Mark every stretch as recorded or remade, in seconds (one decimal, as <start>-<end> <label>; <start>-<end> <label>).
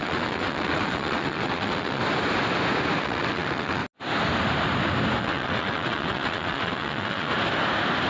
0.0-2.0 remade; 2.0-3.0 recorded; 3.0-3.8 remade; 3.8-5.2 recorded; 5.2-7.3 remade; 7.3-8.1 recorded